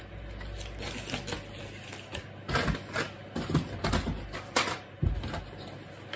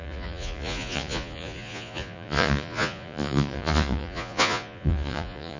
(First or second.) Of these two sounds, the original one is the first